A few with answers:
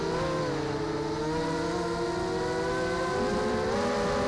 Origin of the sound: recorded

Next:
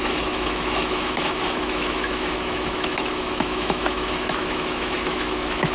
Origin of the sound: remade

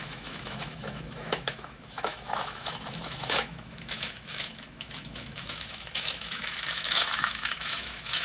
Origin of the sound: remade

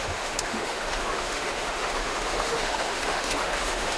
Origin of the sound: remade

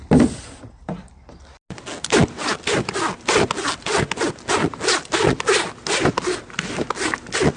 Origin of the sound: recorded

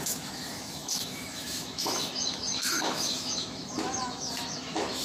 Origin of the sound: remade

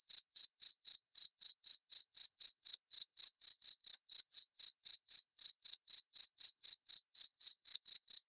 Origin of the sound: remade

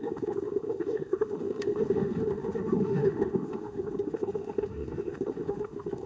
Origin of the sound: remade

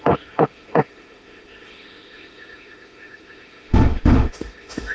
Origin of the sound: remade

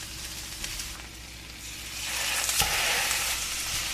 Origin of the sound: recorded